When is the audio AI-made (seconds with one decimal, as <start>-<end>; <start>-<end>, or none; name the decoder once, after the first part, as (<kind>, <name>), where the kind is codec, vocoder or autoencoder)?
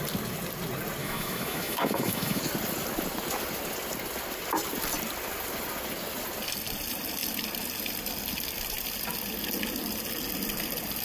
1.0-2.4 (autoencoder, DAC-VAE)